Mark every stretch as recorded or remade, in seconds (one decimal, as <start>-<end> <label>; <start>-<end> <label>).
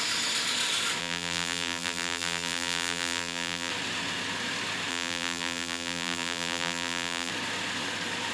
0.0-1.0 recorded; 1.0-3.7 remade; 3.7-4.9 recorded; 4.9-7.3 remade; 7.3-8.3 recorded